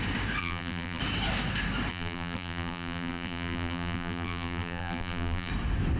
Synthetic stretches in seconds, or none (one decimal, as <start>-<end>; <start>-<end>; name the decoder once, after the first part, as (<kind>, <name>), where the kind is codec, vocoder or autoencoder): 0.4-1.0 (vocoder, BigVGAN v2); 1.9-5.5